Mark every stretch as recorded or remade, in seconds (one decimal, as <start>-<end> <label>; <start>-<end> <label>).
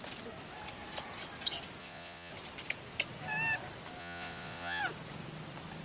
0.0-1.8 recorded; 1.8-2.3 remade; 2.3-4.0 recorded; 4.0-4.8 remade; 4.8-5.8 recorded